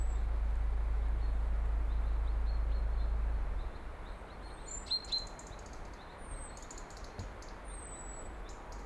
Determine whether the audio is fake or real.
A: real